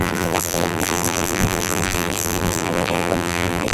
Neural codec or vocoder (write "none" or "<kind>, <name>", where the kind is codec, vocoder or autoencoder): vocoder, BigVGAN v2